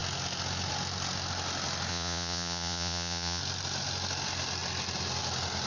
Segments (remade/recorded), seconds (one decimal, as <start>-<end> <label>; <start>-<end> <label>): 0.0-1.9 recorded; 1.9-3.4 remade; 3.4-5.7 recorded